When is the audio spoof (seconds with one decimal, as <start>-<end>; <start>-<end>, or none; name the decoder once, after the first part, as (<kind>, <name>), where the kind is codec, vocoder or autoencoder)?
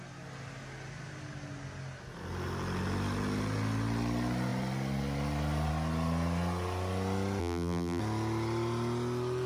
7.4-8.0 (vocoder, BigVGAN v2)